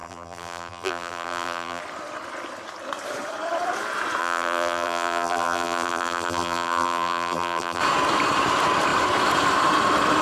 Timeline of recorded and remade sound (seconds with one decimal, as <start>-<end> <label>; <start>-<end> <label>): 0.0-1.8 remade; 1.8-4.2 recorded; 4.2-7.8 remade; 7.8-10.2 recorded